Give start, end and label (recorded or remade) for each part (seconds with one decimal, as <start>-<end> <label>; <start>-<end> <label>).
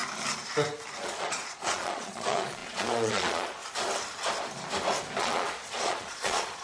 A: 0.0-1.0 recorded; 1.0-3.6 remade; 3.6-5.2 recorded; 5.2-6.6 remade